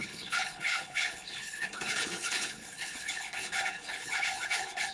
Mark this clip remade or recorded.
remade